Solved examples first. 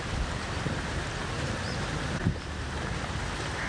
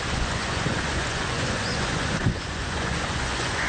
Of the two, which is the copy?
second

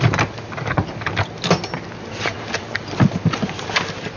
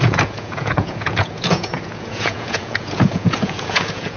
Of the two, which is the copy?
second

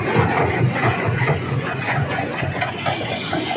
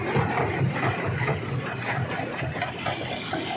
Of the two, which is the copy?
first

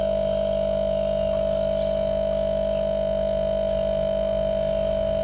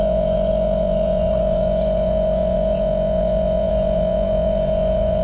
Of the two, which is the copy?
second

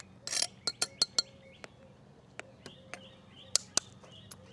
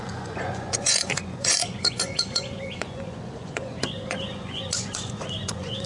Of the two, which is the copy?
second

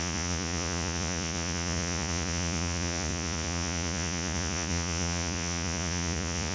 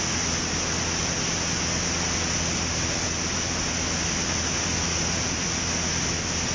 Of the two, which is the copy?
first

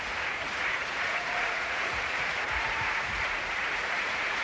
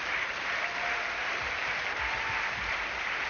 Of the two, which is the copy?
first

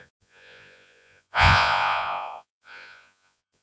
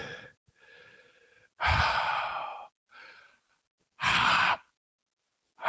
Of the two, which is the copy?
first